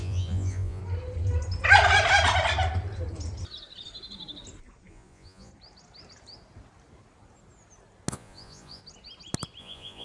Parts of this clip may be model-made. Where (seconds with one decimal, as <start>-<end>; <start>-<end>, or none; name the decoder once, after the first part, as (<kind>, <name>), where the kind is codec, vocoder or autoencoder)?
0.0-0.8 (vocoder, Vocos); 4.9-5.5; 8.1-8.8; 9.6-10.0